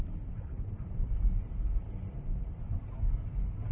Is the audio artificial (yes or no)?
no